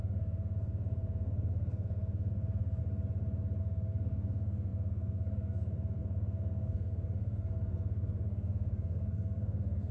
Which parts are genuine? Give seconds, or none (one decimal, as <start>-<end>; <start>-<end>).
2.8-3.6